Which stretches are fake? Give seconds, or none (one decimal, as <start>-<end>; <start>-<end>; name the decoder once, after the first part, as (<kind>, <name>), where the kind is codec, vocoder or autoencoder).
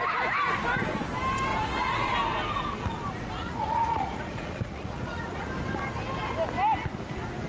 1.5-2.1 (vocoder, Vocos); 3.4-5.5